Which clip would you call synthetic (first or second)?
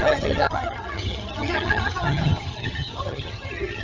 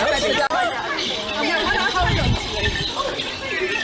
first